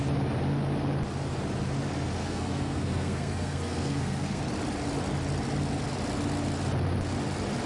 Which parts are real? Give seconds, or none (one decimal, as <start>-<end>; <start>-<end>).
0.0-2.2; 4.4-7.7